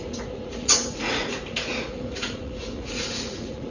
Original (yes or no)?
no